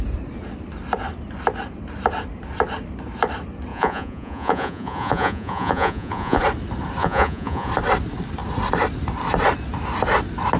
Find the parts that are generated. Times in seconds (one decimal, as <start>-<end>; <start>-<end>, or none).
3.7-6.4; 7.0-7.7